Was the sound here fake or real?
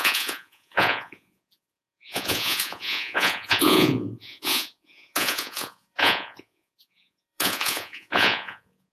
fake